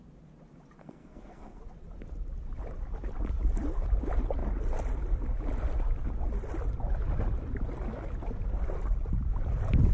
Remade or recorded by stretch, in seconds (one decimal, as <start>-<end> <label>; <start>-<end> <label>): 0.0-0.8 recorded; 0.8-1.6 remade; 1.6-9.9 recorded